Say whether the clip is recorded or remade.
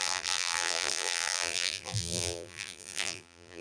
remade